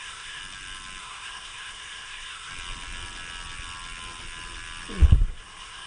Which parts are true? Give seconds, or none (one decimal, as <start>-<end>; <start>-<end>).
0.4-1.0; 2.5-5.1